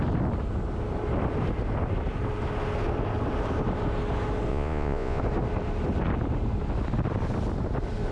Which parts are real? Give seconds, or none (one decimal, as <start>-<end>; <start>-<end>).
0.0-4.5; 5.2-8.1